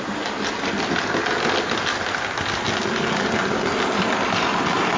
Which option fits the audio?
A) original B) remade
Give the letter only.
A